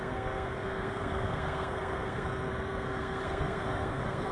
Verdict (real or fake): fake